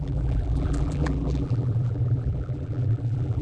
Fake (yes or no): yes